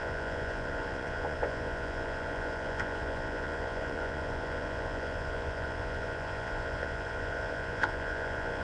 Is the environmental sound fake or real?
fake